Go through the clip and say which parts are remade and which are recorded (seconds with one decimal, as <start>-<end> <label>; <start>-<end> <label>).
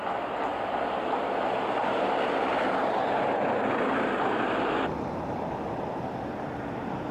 0.0-7.1 recorded